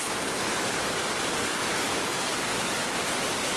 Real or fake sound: fake